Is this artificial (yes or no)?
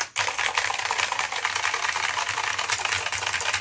no